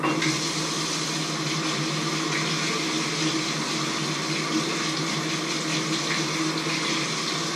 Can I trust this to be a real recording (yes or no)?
yes